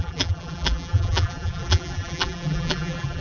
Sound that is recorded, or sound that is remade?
remade